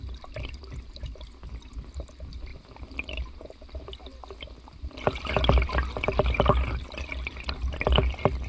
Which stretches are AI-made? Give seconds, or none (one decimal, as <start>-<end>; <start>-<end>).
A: none